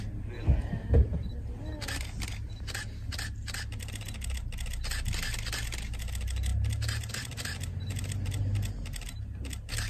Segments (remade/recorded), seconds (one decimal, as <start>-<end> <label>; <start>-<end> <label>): 0.0-9.9 recorded